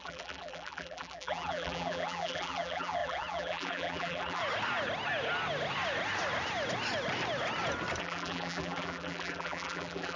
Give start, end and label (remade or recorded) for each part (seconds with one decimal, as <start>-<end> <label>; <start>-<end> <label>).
0.0-4.4 remade; 4.4-8.0 recorded; 8.0-10.2 remade